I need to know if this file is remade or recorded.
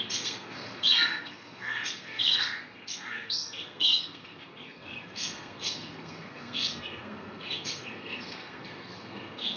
remade